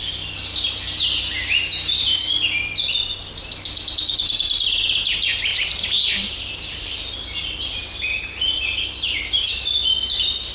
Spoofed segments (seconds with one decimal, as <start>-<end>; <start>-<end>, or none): 5.5-6.3